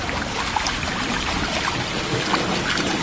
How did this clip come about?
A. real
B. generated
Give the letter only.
A